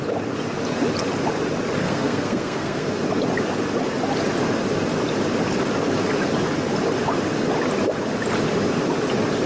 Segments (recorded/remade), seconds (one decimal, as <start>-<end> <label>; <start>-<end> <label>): 0.0-1.8 recorded; 1.8-2.9 remade; 2.9-9.5 recorded